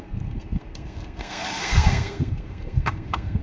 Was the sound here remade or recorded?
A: remade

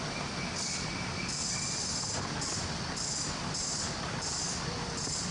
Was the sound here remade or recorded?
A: recorded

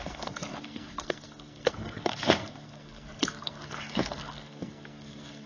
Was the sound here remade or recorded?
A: remade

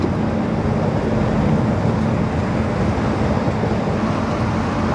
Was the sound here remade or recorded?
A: recorded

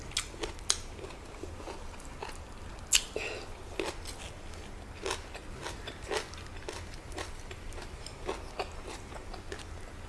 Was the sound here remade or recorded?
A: recorded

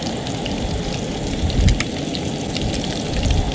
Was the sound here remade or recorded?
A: recorded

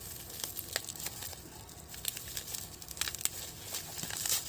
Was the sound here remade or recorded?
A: recorded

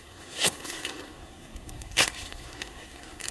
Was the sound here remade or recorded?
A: remade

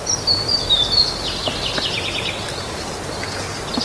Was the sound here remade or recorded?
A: recorded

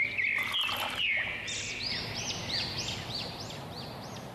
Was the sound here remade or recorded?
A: recorded